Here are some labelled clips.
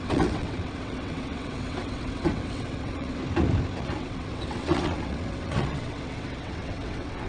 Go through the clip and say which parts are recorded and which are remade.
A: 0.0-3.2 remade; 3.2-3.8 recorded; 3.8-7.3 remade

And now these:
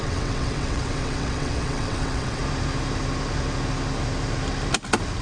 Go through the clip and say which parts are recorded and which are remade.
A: 0.0-2.4 remade; 2.4-5.2 recorded